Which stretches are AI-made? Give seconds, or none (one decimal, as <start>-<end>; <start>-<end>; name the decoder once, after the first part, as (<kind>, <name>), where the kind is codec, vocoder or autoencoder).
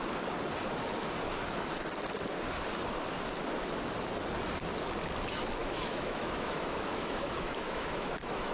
5.6-8.5 (autoencoder, DAC-VAE)